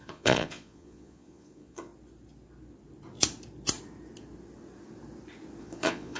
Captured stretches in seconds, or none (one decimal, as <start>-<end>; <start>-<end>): 1.9-5.6